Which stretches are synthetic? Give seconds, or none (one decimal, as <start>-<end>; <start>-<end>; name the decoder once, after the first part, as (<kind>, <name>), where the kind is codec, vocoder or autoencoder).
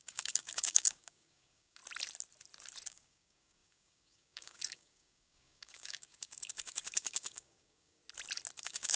0.0-1.8 (codec, DAC); 2.9-8.0; 8.6-9.0